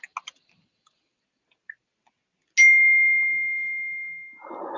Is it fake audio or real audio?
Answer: real